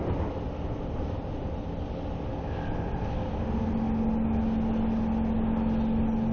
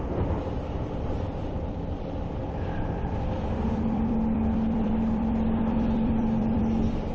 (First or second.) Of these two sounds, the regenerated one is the second